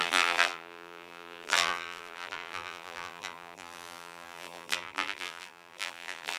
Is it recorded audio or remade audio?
remade